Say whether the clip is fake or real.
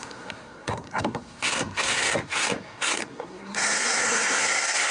fake